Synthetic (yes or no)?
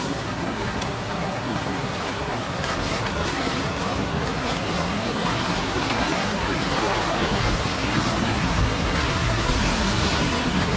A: yes